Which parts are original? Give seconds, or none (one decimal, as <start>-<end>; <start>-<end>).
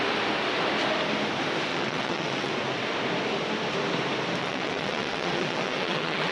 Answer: 0.0-1.7; 2.5-4.4